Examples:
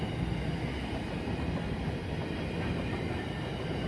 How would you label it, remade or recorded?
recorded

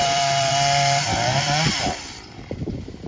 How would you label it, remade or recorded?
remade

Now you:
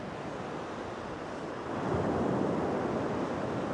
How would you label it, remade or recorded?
recorded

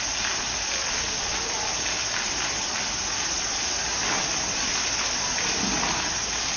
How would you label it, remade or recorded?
recorded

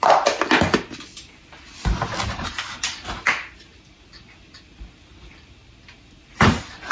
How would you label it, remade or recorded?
recorded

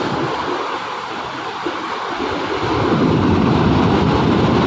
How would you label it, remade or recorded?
remade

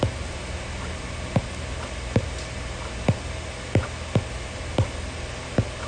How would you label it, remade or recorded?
recorded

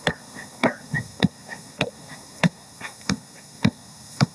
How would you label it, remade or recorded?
remade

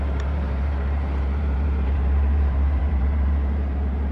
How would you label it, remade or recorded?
remade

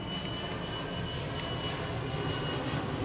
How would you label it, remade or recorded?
recorded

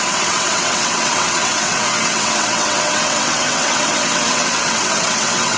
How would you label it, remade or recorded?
remade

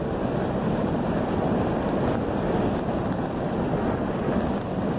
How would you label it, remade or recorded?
recorded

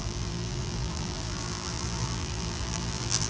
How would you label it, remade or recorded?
remade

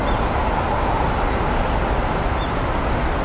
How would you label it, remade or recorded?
recorded